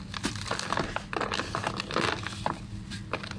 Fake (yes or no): no